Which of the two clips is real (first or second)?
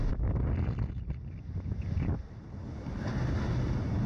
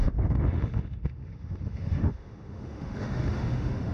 first